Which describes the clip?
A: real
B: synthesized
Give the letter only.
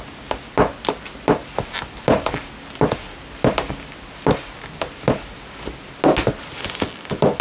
A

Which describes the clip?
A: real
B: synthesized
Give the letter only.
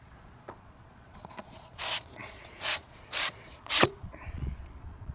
B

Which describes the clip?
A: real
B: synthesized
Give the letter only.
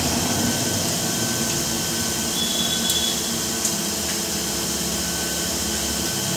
B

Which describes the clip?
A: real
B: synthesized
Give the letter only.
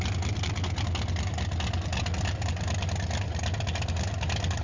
A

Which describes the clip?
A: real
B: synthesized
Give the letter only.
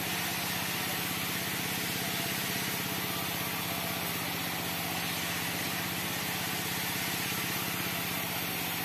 A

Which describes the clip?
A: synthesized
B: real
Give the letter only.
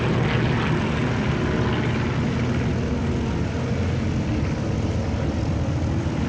B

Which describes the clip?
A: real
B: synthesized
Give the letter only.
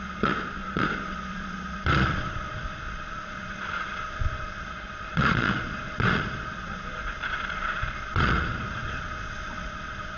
B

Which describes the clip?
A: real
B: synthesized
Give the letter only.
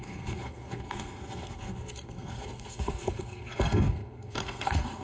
B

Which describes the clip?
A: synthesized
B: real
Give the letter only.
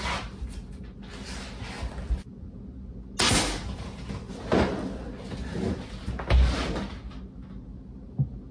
B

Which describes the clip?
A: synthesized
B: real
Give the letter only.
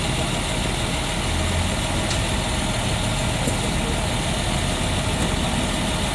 B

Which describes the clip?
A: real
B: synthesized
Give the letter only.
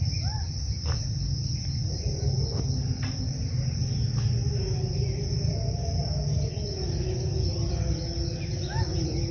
A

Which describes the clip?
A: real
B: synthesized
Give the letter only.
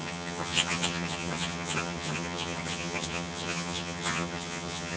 B